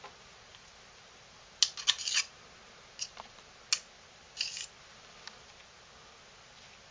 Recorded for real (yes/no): yes